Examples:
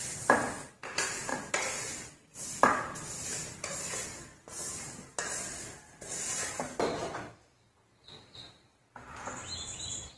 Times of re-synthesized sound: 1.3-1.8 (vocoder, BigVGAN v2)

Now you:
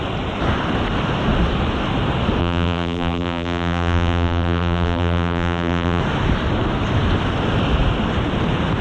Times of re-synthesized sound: 2.4-6.0 (vocoder, BigVGAN v2)

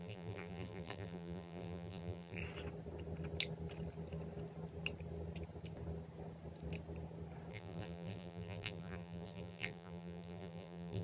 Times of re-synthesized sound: 0.0-2.4 (vocoder, BigVGAN v2); 7.5-11.0

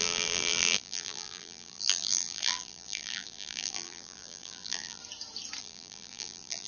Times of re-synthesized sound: 0.0-5.0 (vocoder, BigVGAN v2); 5.6-6.7

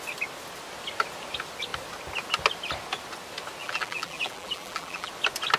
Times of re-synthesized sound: 3.6-5.1 (vocoder, BigVGAN v2)

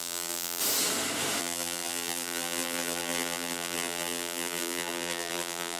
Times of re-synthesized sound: 0.0-0.6 (vocoder, BigVGAN v2); 1.4-5.8

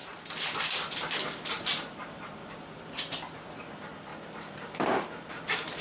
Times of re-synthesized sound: 0.9-2.4 (vocoder, BigVGAN v2); 3.6-5.8